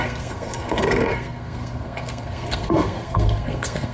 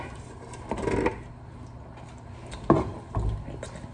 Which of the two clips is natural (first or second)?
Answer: second